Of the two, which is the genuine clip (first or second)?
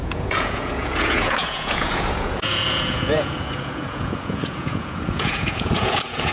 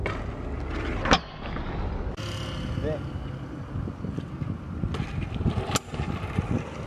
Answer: second